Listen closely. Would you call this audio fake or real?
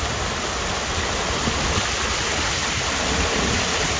real